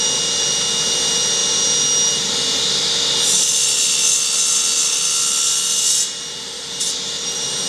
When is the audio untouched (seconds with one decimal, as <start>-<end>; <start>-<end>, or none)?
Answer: 0.0-7.7